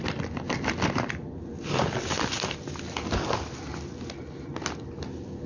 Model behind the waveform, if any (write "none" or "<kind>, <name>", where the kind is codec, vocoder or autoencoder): none